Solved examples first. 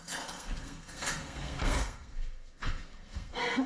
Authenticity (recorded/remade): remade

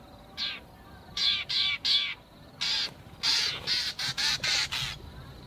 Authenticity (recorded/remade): recorded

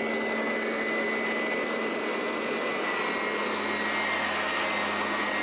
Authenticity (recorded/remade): recorded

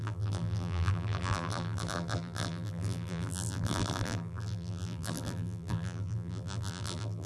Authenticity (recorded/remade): remade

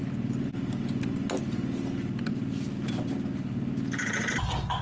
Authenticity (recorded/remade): recorded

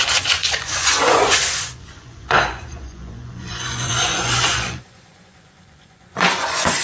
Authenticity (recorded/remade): remade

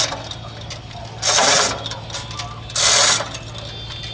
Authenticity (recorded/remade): recorded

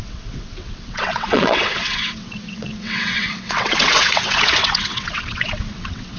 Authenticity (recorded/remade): remade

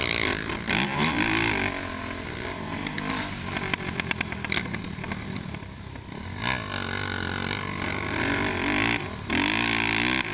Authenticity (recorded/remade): recorded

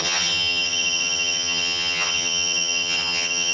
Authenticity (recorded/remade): remade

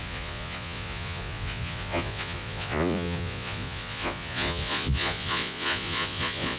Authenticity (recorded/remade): remade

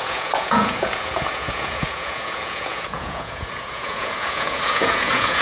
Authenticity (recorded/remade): remade